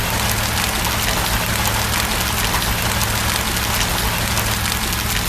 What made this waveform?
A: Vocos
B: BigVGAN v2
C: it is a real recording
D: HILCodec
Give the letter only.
C